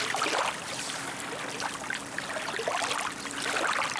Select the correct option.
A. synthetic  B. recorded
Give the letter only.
B